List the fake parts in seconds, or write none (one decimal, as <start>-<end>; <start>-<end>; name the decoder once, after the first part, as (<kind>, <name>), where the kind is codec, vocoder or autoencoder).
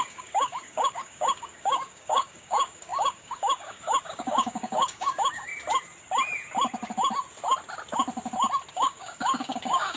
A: 0.0-5.5 (codec, DAC); 8.7-10.0